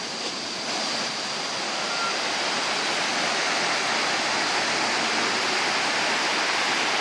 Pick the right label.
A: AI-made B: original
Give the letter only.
B